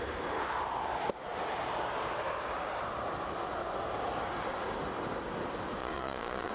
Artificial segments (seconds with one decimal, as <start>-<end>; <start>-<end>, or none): 5.8-6.5